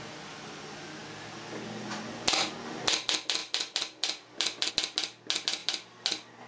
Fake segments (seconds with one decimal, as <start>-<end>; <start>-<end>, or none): 3.4-4.7